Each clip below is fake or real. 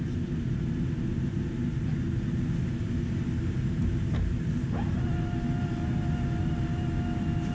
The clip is real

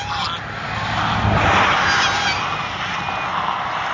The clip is real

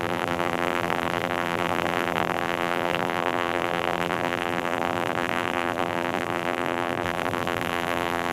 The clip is fake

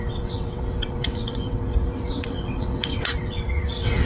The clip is fake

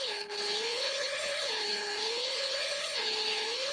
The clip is fake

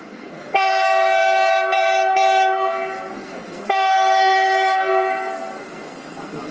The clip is fake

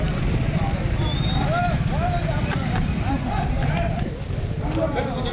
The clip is real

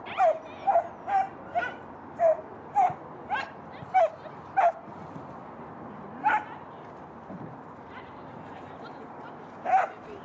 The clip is real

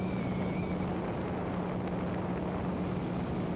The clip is real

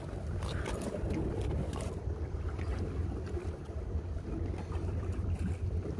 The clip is real